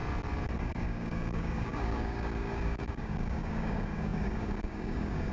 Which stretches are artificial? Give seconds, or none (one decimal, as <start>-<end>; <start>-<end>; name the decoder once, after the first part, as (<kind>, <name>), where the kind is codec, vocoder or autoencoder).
0.6-5.3 (codec, DAC)